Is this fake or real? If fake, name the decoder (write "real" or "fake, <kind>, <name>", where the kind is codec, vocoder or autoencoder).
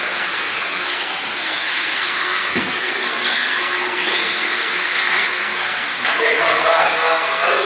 fake, codec, SNAC